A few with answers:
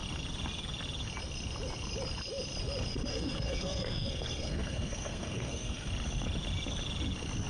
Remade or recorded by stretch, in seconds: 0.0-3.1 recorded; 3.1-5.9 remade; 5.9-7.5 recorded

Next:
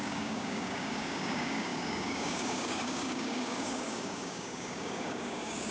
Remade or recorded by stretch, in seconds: 0.0-5.7 remade

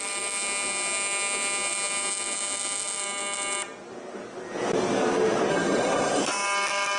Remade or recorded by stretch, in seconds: 0.0-5.5 recorded; 5.5-6.2 remade; 6.2-7.0 recorded

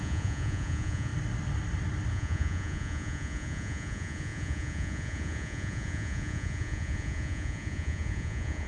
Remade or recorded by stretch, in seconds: 0.0-1.1 remade; 1.1-2.1 recorded; 2.1-8.7 remade

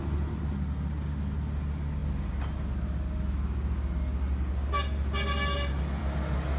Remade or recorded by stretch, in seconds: 0.0-6.6 recorded